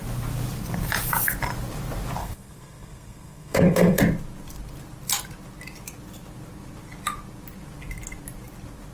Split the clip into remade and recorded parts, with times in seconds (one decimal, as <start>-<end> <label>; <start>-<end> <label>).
0.0-2.2 recorded; 2.2-4.0 remade; 4.0-8.9 recorded